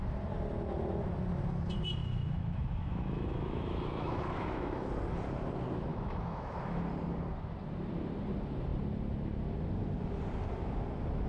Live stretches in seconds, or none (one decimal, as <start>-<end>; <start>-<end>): 0.0-2.0; 4.9-5.9; 6.8-11.3